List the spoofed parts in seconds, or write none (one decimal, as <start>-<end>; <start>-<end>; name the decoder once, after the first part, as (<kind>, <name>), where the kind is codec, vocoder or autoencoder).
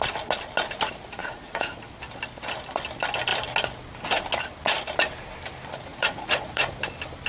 1.2-1.8 (vocoder, Vocos); 5.9-6.8